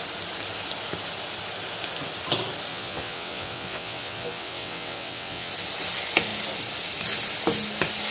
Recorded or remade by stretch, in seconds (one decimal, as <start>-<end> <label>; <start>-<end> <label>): 0.0-2.7 recorded; 2.7-5.5 remade; 5.5-8.1 recorded